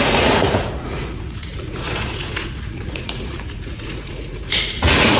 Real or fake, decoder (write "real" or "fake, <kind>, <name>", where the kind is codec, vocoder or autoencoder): fake, vocoder, Vocos